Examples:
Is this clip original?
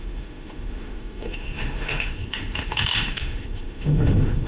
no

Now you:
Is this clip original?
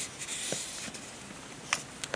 yes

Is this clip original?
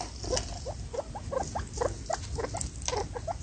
yes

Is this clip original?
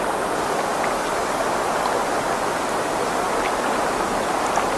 yes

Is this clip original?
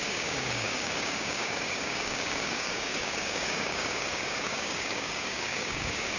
no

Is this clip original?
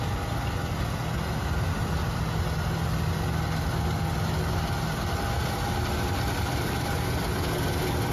yes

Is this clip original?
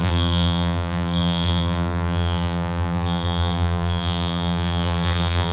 no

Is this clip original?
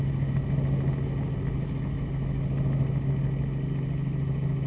yes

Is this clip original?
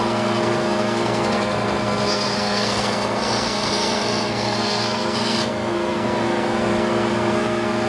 no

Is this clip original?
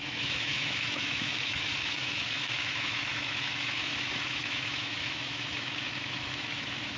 no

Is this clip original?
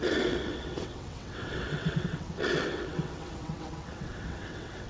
no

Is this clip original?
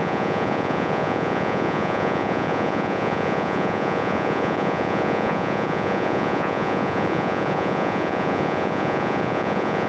no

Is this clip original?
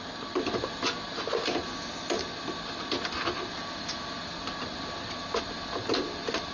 yes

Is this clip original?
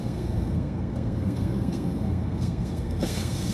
no